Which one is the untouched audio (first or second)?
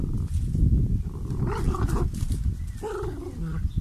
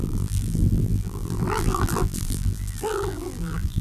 first